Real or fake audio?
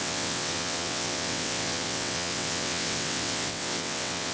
fake